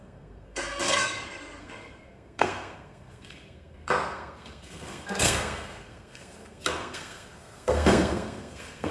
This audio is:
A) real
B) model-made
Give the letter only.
B